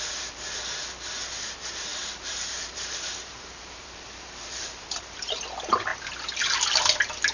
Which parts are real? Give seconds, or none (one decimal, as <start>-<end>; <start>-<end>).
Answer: 0.0-1.9; 5.3-7.3

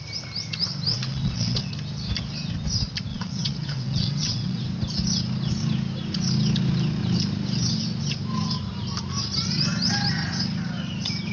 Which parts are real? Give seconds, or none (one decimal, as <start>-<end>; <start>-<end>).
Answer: 0.0-0.9; 1.7-3.1; 4.6-11.3

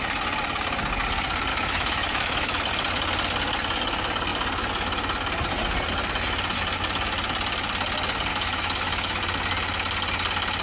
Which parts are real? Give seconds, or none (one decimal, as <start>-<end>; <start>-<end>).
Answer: 0.0-1.5; 2.7-8.3; 9.2-10.6

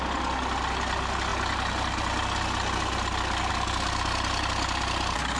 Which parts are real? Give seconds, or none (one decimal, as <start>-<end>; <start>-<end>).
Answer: 0.0-5.4

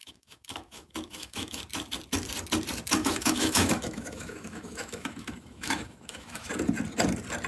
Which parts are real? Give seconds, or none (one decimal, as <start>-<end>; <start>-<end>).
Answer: 1.6-3.0; 6.5-7.5

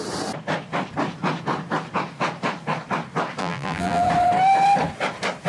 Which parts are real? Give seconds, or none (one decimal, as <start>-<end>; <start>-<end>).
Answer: 0.0-3.4; 4.0-5.5